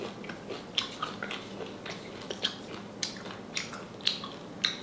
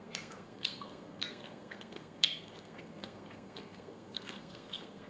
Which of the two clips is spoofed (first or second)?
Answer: second